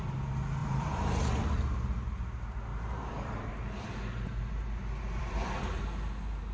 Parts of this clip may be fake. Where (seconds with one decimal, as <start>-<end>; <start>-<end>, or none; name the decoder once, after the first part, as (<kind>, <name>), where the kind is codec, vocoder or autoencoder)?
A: 0.6-2.0 (vocoder, BigVGAN v2); 2.7-3.5; 5.2-5.8